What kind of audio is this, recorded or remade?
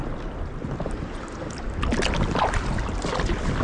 recorded